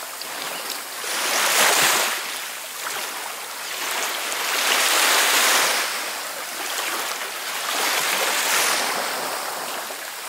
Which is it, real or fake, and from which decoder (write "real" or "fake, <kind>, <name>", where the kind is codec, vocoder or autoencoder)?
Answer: real